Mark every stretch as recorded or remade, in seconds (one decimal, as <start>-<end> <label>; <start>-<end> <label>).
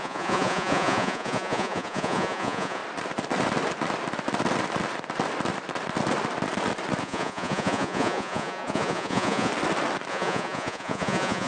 0.0-2.8 remade; 2.8-7.0 recorded; 7.0-9.5 remade; 9.5-10.1 recorded; 10.1-11.5 remade